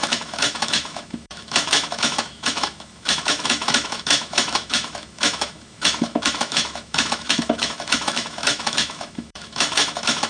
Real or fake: fake